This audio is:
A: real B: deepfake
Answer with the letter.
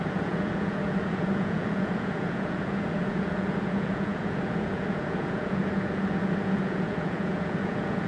B